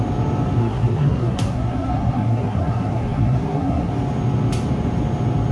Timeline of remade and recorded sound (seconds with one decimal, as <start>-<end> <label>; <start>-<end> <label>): 0.0-0.6 recorded; 0.6-3.9 remade; 3.9-5.5 recorded